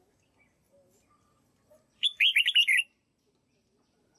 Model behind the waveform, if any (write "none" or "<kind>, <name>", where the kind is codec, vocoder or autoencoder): none